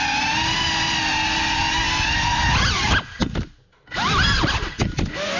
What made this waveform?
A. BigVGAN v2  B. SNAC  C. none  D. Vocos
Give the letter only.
C